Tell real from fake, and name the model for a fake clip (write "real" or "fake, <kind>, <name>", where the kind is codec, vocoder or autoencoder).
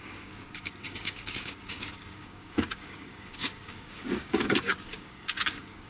fake, codec, DAC